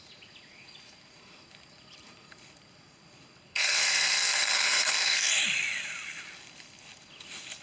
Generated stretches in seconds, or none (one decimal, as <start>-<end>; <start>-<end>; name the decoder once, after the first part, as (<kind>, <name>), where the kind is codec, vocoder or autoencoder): 3.5-5.4 (codec, SNAC)